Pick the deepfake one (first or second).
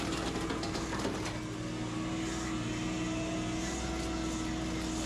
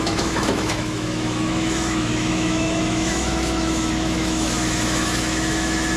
second